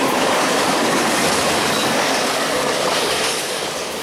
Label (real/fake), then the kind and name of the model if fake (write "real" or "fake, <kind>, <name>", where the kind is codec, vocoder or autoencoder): fake, codec, DAC